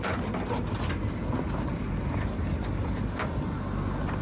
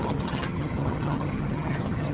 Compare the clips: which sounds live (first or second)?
first